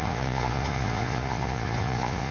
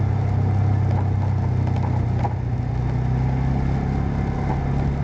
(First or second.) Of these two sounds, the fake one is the first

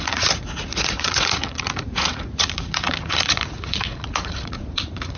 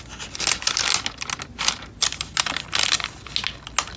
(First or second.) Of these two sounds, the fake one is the first